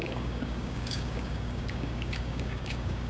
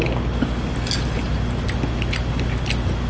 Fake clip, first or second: first